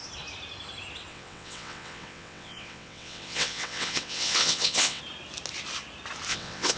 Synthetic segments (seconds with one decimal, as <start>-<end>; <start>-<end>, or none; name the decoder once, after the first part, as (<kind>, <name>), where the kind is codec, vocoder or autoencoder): 1.1-5.0 (vocoder, WaveNeXt); 6.3-6.8